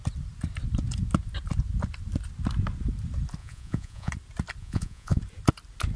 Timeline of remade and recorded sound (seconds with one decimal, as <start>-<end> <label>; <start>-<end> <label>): 0.0-3.4 recorded; 3.4-4.1 remade; 4.1-4.6 recorded; 4.6-5.2 remade; 5.2-6.0 recorded